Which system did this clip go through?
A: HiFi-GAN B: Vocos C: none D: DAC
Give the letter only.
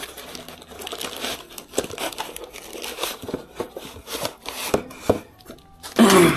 C